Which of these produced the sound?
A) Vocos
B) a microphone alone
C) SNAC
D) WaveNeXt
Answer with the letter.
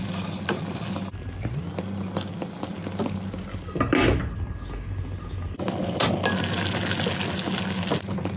B